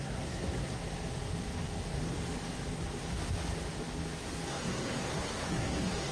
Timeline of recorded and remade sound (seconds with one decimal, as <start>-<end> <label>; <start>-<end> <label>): 0.0-0.8 remade; 0.8-4.5 recorded; 4.5-6.1 remade